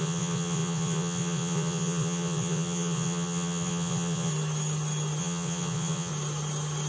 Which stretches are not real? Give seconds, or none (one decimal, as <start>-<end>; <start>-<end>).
0.0-4.3; 5.2-6.1